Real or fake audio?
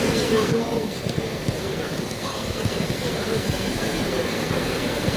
fake